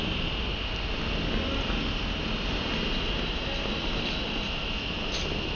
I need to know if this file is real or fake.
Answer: real